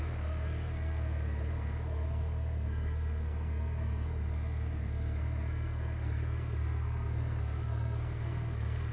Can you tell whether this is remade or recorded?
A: remade